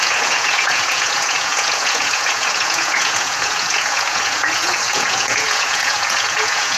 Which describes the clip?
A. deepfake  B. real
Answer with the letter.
A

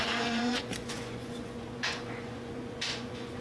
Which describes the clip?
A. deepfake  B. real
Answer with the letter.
A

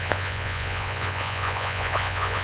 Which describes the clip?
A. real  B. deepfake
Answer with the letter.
B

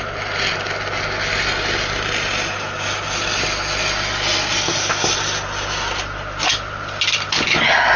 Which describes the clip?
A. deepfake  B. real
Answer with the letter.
B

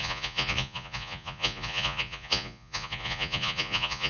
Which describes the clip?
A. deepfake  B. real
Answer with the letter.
A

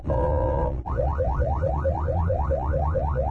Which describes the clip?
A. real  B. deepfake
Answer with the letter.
B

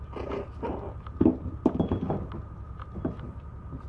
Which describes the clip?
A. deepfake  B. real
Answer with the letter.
B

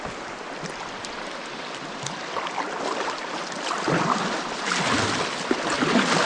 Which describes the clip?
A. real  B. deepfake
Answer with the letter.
A